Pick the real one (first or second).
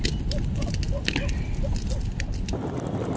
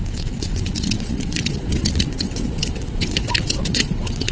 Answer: first